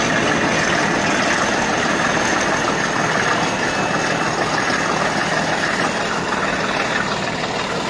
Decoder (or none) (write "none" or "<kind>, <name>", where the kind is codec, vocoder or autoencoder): none